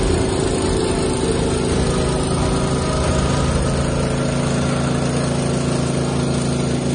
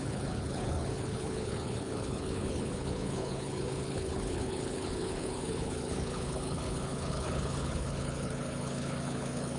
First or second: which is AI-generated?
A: second